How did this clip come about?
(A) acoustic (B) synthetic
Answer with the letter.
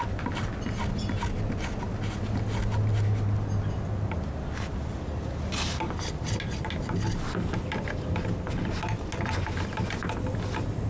A